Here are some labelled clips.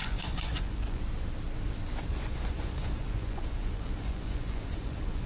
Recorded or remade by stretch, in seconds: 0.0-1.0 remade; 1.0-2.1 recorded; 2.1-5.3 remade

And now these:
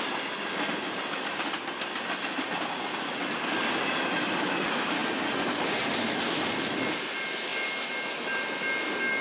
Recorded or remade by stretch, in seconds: 0.0-9.2 recorded

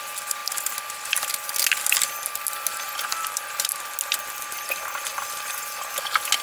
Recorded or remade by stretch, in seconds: 0.0-6.4 recorded

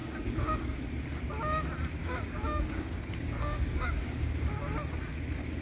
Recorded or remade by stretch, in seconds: 0.0-0.8 remade; 0.8-2.0 recorded; 2.0-4.6 remade; 4.6-5.6 recorded

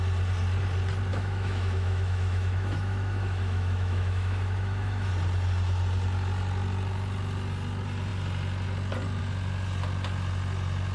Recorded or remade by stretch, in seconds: 0.0-1.1 recorded; 1.1-5.1 remade; 5.1-10.9 recorded

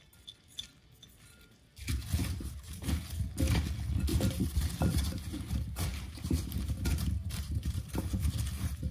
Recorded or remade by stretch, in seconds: 0.0-2.2 recorded; 2.2-3.0 remade; 3.0-4.1 recorded; 4.1-8.9 remade

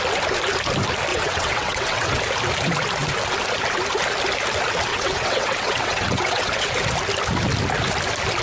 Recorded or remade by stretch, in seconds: 0.0-1.1 recorded; 1.1-2.2 remade; 2.2-4.9 recorded; 4.9-6.7 remade; 6.7-8.4 recorded

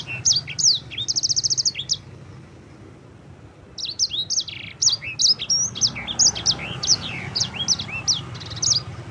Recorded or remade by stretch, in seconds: 0.0-6.9 recorded; 6.9-7.5 remade; 7.5-9.1 recorded